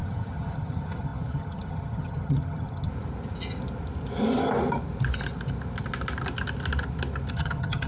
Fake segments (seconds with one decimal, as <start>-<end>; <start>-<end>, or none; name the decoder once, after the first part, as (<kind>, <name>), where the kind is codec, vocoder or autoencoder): 0.0-2.9 (vocoder, HiFi-GAN); 7.3-7.9